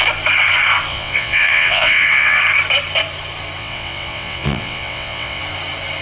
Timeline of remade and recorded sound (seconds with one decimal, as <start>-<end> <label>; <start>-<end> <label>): 0.0-0.9 recorded; 0.9-2.4 remade; 2.4-3.6 recorded; 3.6-5.4 remade; 5.4-6.0 recorded